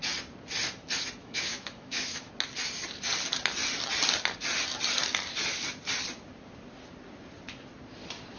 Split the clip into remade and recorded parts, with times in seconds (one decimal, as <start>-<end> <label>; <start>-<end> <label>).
0.0-1.2 recorded; 1.2-2.3 remade; 2.3-8.4 recorded